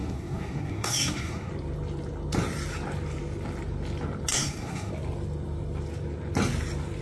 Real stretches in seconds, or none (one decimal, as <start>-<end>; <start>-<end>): 1.5-4.3; 4.9-7.0